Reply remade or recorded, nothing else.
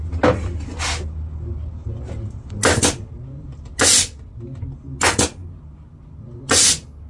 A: recorded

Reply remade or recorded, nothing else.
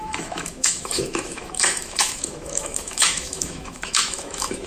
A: remade